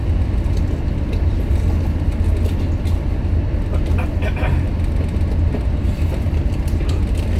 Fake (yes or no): no